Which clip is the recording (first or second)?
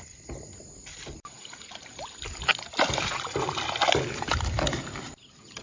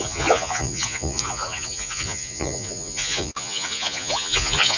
first